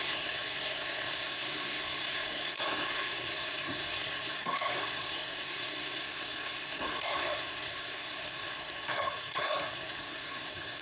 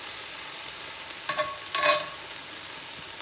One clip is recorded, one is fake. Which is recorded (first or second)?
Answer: second